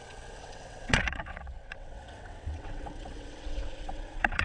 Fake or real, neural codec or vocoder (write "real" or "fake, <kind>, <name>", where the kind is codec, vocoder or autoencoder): fake, vocoder, WaveNeXt